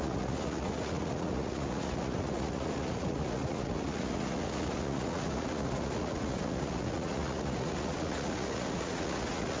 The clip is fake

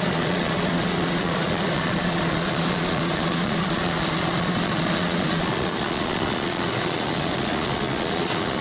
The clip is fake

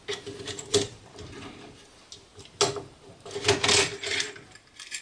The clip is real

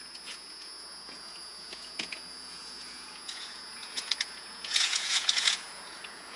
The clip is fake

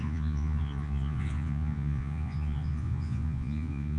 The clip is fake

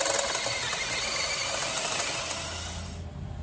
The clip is real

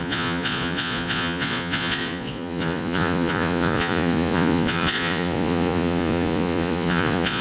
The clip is fake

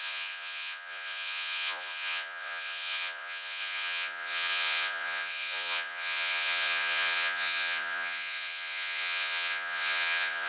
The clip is fake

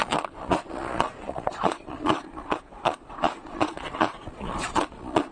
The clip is fake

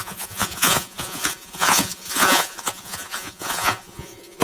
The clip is fake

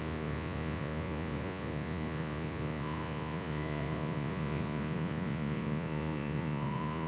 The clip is fake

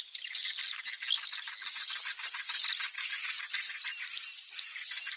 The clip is real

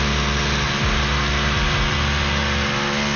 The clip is real